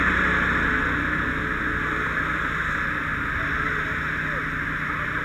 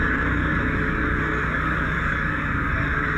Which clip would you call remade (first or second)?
second